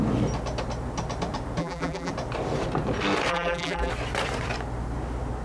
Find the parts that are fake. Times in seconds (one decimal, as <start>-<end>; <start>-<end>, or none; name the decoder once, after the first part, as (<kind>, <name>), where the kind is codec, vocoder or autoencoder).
1.6-2.1 (vocoder, BigVGAN v2); 3.3-3.9